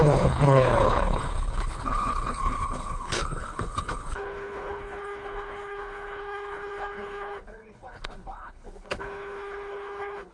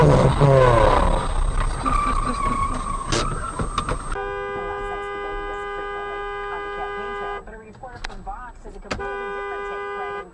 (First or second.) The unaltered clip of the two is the second